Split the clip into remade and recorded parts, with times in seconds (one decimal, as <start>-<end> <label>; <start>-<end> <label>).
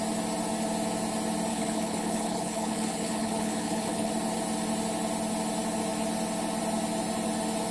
0.0-1.5 recorded; 1.5-4.1 remade; 4.1-7.7 recorded